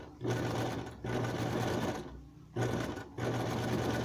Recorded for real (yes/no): yes